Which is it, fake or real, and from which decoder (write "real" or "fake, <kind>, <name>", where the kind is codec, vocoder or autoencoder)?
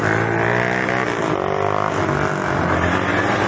real